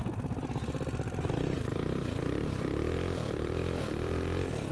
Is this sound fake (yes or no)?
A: yes